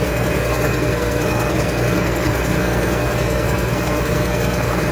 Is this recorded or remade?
remade